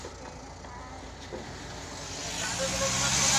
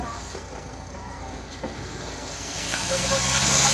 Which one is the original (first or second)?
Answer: first